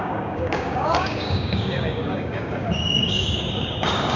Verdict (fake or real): fake